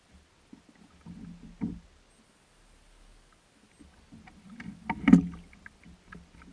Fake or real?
real